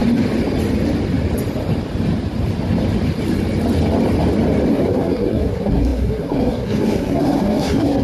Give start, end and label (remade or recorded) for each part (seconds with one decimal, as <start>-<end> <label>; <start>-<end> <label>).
0.0-4.7 recorded; 4.7-8.0 remade

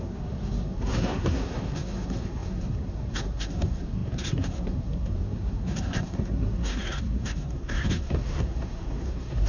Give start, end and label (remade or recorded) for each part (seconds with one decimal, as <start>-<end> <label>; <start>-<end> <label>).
0.0-9.5 remade

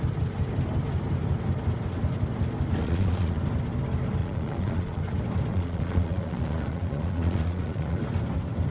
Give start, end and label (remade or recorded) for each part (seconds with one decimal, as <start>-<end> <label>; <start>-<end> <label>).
0.0-2.8 recorded; 2.8-3.4 remade; 3.4-4.2 recorded; 4.2-5.0 remade; 5.0-5.5 recorded; 5.5-8.0 remade; 8.0-8.7 recorded

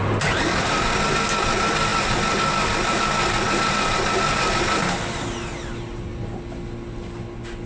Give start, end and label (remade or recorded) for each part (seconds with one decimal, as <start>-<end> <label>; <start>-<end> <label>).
0.0-7.7 recorded

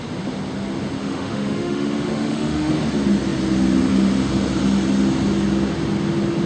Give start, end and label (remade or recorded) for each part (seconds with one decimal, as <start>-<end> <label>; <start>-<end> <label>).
0.0-1.0 recorded; 1.0-2.7 remade; 2.7-6.5 recorded